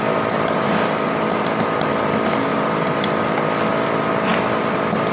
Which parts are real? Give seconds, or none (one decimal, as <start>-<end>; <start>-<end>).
0.0-5.1